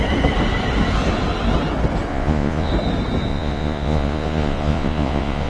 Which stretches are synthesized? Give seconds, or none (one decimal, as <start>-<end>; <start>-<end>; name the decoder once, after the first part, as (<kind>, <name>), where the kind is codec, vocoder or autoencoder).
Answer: 2.1-2.7 (vocoder, Vocos); 3.3-5.5